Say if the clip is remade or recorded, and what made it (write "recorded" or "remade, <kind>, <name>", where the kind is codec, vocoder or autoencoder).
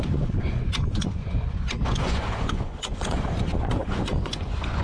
remade, vocoder, Vocos